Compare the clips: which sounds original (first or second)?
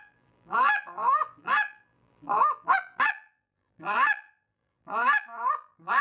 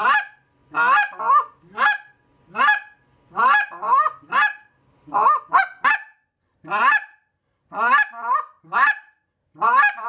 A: second